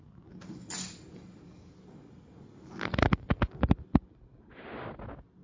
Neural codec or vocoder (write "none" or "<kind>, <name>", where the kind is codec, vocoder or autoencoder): none